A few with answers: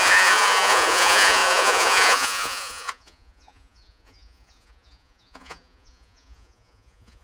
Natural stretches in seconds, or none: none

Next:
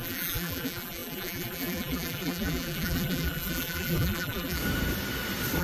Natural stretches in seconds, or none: 4.6-5.6

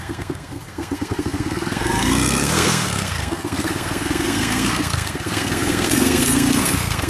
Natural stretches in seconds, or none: none

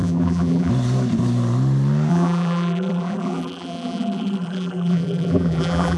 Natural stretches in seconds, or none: 0.7-2.1

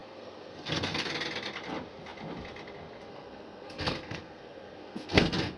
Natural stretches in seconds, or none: 1.1-3.1

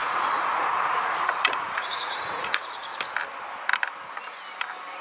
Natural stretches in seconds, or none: 3.0-5.0

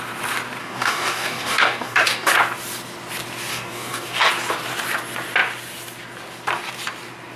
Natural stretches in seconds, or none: 0.0-0.6; 2.3-3.5; 4.3-7.4

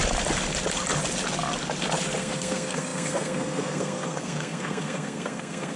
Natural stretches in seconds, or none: 0.0-2.2